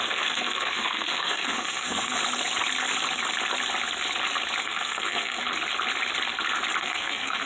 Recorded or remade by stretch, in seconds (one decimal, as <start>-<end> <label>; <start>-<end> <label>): 0.0-2.2 remade; 2.2-4.6 recorded; 4.6-5.4 remade; 5.4-6.8 recorded; 6.8-7.5 remade